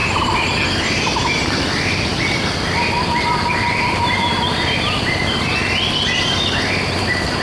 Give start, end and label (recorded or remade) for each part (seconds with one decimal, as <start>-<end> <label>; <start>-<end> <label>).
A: 0.0-3.2 recorded; 3.2-5.6 remade; 5.6-7.4 recorded